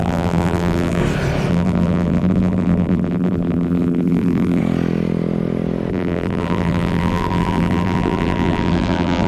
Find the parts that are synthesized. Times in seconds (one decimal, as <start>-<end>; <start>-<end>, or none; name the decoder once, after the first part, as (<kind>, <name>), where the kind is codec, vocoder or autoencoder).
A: 0.0-1.0 (vocoder, BigVGAN v2); 1.5-4.6; 5.9-9.3